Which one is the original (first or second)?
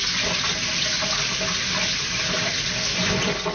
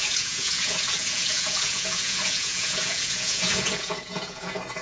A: first